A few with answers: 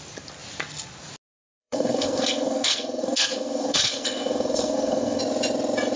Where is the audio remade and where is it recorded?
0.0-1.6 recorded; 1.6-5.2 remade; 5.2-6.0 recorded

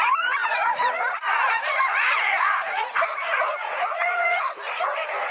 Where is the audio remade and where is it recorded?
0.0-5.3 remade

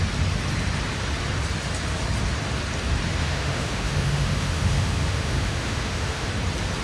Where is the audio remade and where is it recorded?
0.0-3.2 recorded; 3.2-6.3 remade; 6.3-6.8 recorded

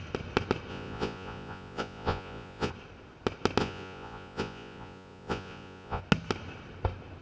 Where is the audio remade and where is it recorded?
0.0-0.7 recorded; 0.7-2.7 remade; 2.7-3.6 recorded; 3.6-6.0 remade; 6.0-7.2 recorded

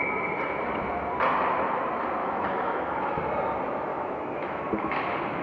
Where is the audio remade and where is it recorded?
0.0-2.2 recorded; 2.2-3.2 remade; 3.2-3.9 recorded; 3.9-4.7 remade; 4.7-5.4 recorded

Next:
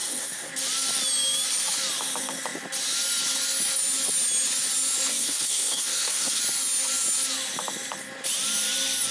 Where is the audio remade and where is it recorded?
0.0-0.5 remade; 0.5-5.1 recorded; 5.1-6.4 remade; 6.4-9.1 recorded

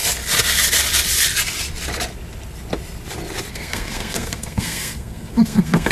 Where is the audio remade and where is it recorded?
0.0-3.5 recorded; 3.5-5.9 remade